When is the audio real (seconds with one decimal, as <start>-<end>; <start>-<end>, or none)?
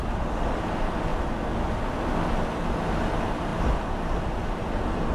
0.0-5.1